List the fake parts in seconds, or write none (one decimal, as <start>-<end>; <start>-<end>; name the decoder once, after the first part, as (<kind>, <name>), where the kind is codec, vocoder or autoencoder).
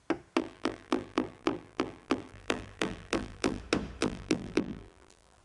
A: 0.4-3.6 (vocoder, BigVGAN v2); 4.0-5.4